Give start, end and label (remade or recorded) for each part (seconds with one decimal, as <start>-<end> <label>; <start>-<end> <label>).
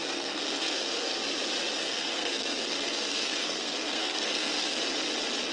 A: 0.0-1.2 remade; 1.2-1.8 recorded; 1.8-4.8 remade; 4.8-5.5 recorded